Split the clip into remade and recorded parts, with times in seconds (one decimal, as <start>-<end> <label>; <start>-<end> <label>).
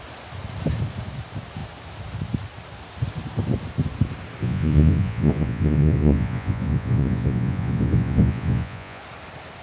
0.0-4.4 recorded; 4.4-9.0 remade; 9.0-9.6 recorded